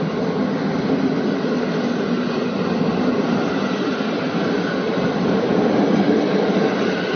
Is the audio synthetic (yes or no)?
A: no